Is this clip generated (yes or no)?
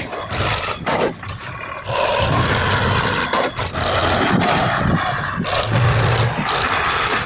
no